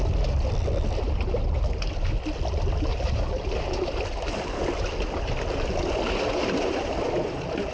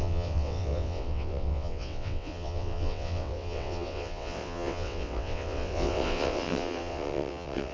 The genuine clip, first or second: first